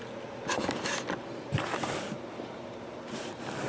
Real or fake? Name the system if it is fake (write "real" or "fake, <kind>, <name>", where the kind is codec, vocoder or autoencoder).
real